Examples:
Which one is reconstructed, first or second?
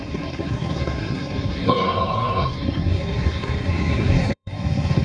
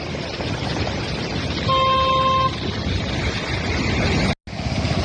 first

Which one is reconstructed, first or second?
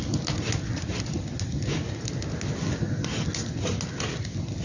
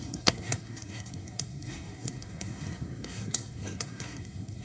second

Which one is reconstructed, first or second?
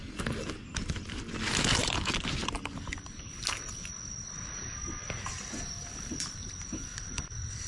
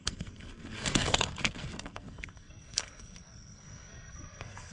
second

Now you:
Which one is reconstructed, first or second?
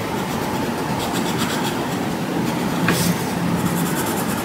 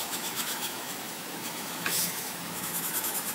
second